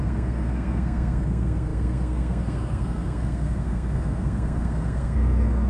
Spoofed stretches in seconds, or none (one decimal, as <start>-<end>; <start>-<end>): 0.0-5.7